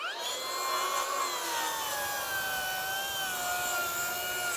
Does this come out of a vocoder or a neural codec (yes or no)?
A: no